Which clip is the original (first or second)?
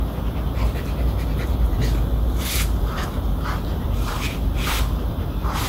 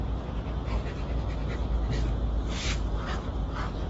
second